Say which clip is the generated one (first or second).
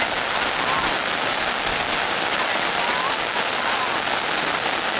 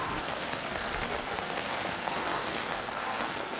second